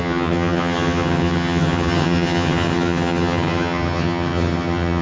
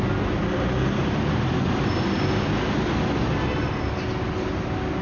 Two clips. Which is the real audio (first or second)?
second